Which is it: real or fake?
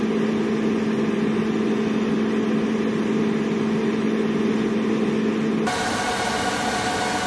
real